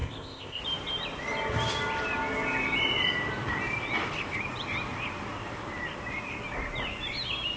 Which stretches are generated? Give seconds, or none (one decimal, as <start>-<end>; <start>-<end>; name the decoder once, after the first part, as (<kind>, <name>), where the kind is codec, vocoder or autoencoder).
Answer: 0.0-0.6 (codec, ZipCodec)